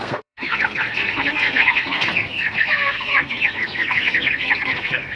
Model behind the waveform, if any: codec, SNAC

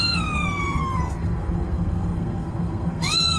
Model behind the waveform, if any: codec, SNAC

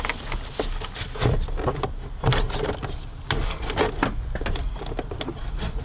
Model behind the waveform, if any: none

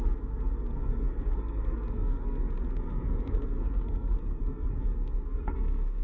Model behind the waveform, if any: codec, SNAC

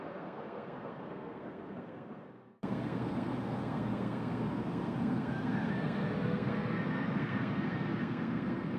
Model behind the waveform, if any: codec, SNAC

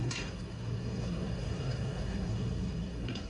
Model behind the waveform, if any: codec, SNAC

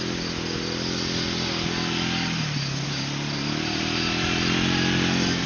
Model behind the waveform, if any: none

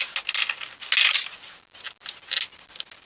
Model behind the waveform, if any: none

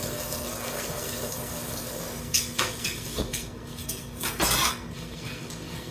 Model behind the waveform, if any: codec, SNAC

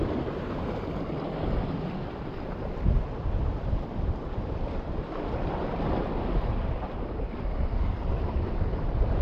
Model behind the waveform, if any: none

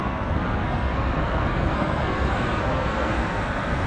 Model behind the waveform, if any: codec, SNAC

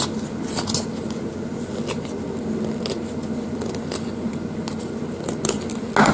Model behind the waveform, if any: none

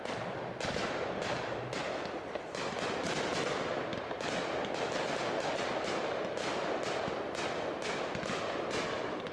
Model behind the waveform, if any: none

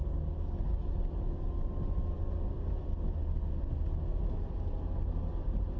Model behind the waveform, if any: none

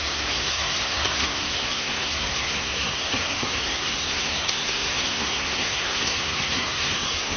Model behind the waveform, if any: codec, SNAC